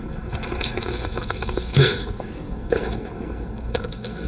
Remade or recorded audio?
remade